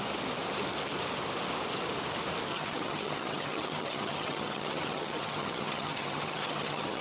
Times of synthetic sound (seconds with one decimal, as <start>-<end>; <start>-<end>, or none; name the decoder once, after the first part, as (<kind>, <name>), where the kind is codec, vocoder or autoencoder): 2.5-7.0 (vocoder, HiFi-GAN)